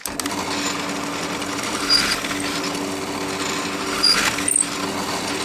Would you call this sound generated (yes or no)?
no